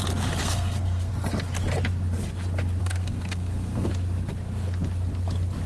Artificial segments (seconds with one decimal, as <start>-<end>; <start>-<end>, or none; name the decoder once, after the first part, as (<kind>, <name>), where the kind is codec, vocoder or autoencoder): 0.4-1.1 (codec, SNAC); 2.8-3.9